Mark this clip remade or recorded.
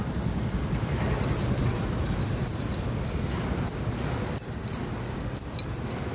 recorded